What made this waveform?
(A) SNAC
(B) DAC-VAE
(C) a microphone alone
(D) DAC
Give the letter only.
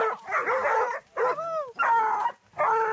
C